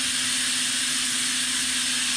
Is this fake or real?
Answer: real